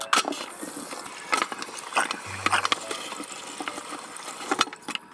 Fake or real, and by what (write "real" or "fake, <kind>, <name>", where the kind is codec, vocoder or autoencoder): real